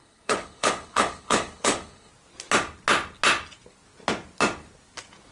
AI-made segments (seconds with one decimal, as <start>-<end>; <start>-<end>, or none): 0.0-2.1